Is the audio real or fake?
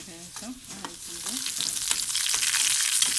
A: real